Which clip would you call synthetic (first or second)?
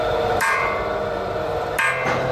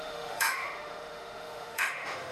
second